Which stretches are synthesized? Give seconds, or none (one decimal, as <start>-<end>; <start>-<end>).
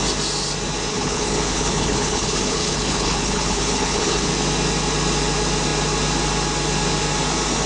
0.9-4.3